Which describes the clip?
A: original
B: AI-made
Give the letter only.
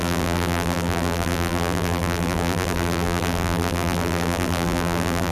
B